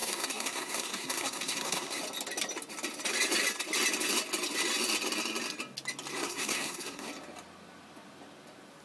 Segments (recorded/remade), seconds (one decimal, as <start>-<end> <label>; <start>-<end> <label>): 0.0-2.0 remade; 2.0-6.2 recorded; 6.2-7.1 remade; 7.1-8.8 recorded